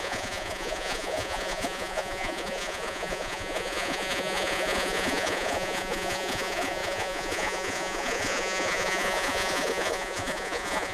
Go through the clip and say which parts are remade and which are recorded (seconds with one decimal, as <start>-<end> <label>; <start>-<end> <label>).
0.0-10.9 remade